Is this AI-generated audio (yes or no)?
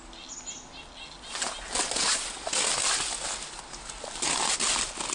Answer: no